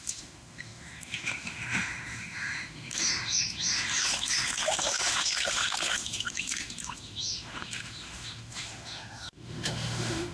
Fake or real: fake